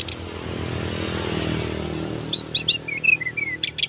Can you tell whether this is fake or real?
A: real